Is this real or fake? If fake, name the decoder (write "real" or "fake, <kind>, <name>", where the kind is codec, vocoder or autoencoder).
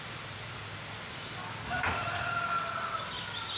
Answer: real